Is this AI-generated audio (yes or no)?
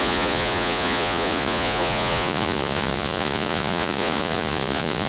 yes